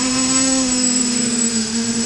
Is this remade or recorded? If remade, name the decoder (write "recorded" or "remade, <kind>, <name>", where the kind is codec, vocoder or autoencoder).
remade, autoencoder, DAC-VAE